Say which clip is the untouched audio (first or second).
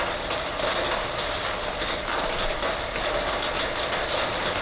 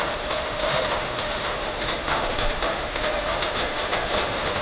first